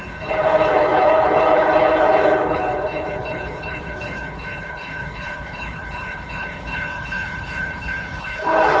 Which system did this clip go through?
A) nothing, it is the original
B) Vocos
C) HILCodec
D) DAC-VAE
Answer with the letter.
C